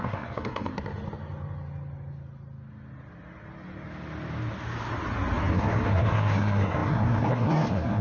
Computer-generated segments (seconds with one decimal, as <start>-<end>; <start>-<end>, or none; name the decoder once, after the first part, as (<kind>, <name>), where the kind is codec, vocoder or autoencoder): 0.0-0.7 (codec, SNAC); 5.5-8.0